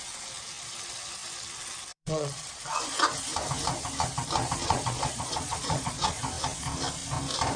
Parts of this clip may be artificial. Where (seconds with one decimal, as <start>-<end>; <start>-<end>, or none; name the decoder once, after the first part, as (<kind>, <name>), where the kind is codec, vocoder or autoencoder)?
1.9-2.4 (vocoder, Vocos); 4.6-6.2